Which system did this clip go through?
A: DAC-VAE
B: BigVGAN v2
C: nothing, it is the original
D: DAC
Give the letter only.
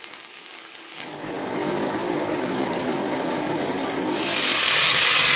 D